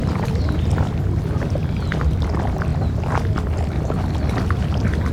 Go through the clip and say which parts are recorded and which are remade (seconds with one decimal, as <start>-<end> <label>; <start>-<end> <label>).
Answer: 0.0-2.1 remade; 2.1-5.1 recorded